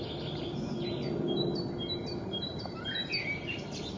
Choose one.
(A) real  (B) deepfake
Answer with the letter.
A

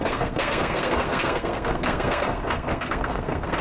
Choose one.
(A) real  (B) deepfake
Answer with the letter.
B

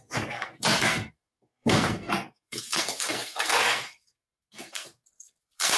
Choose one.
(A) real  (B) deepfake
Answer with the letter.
B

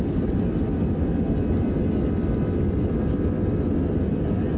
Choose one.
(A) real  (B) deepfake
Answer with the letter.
A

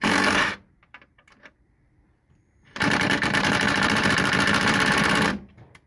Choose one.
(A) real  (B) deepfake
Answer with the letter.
B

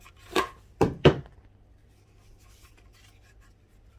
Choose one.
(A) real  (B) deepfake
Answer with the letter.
B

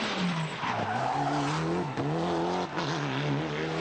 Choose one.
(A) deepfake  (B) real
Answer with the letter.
B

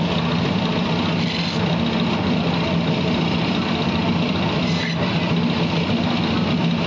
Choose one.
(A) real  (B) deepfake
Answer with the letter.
A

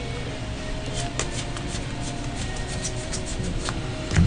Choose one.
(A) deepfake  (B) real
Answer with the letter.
B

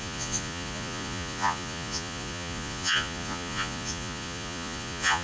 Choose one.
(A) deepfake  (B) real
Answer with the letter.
A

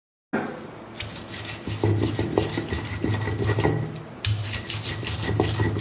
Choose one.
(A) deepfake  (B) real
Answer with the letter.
B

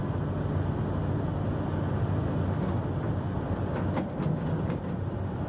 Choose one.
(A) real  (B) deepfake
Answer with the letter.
A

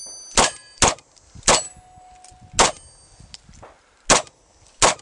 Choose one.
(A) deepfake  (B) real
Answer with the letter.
B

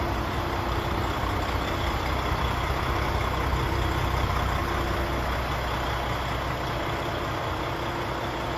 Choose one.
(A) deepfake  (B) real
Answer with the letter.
B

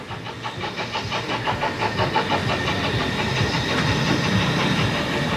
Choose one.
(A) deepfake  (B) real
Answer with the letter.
B